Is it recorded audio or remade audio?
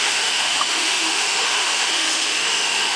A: remade